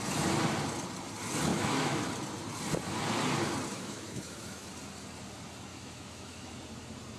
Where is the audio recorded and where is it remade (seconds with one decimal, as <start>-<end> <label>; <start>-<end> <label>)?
0.0-1.5 recorded; 1.5-2.0 remade; 2.0-3.7 recorded; 3.7-4.7 remade; 4.7-5.7 recorded; 5.7-6.5 remade; 6.5-7.2 recorded